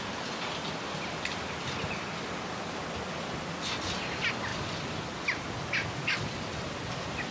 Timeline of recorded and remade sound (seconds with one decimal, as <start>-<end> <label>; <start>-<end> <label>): 0.0-7.3 recorded